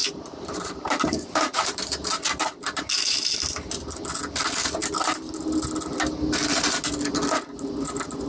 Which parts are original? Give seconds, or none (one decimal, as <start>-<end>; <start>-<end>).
2.2-8.3